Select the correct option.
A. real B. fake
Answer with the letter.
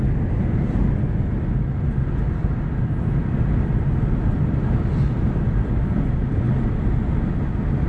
A